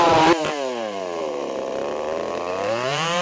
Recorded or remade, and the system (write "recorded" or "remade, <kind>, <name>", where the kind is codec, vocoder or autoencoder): remade, vocoder, BigVGAN v2